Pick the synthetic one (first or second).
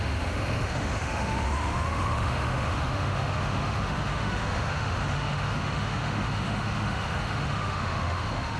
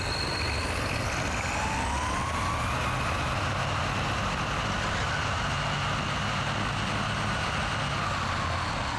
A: first